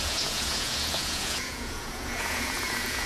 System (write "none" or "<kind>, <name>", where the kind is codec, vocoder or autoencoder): vocoder, Vocos